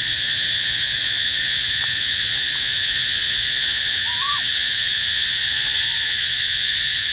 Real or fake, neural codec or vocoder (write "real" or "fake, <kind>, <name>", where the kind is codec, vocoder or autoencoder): fake, vocoder, Vocos